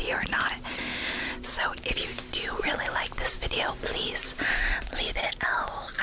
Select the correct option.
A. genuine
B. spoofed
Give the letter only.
B